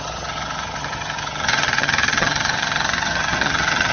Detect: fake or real fake